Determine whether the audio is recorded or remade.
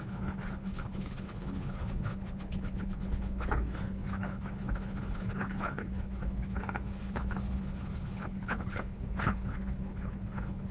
remade